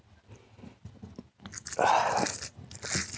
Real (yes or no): yes